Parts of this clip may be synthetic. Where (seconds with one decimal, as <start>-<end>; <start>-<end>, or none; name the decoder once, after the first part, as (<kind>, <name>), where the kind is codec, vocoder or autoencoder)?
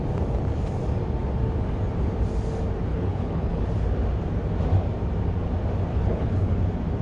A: 2.9-3.6 (codec, HILCodec); 5.9-6.6